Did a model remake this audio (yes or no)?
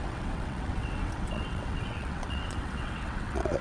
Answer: yes